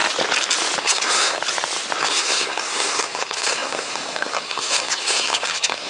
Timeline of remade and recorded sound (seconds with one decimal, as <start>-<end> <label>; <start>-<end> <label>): 0.0-0.8 recorded; 0.8-1.4 remade; 1.4-2.0 recorded; 2.0-5.9 remade